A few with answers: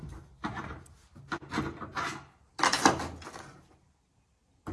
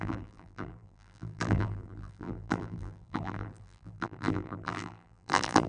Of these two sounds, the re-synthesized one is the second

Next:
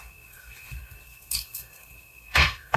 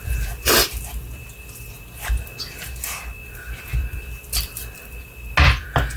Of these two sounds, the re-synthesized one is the first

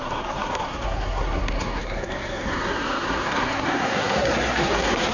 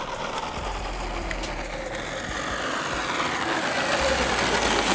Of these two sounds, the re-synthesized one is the first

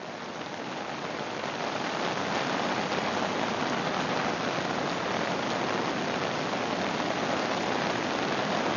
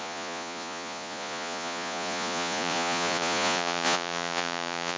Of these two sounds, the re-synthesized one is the second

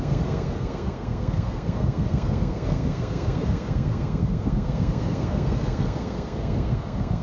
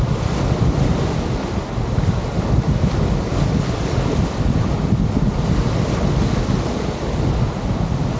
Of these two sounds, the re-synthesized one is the first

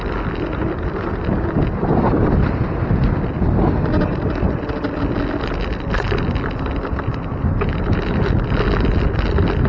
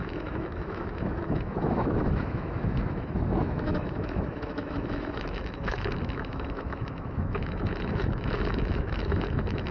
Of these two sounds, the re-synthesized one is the second